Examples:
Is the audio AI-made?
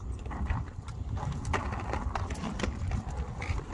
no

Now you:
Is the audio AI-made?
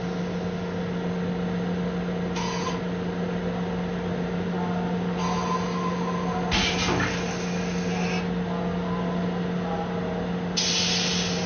no